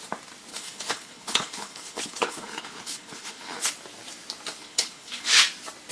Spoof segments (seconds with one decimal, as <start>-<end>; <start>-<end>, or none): 0.5-3.7; 4.6-5.4